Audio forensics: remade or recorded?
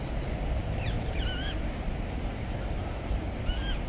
remade